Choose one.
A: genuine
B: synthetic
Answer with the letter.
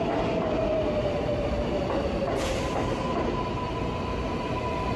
A